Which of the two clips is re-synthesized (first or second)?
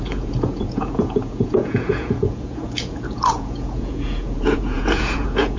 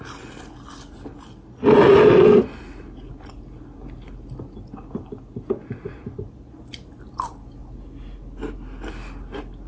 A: first